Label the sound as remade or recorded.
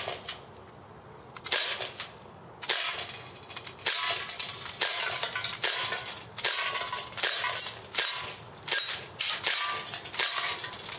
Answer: recorded